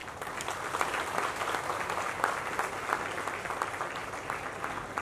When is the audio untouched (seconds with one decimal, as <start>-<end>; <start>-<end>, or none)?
0.0-5.0